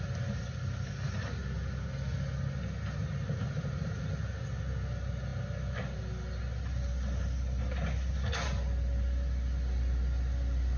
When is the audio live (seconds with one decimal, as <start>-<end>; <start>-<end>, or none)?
0.0-10.8